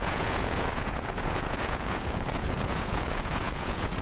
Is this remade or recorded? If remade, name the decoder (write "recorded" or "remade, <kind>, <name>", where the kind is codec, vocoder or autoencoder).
remade, vocoder, Vocos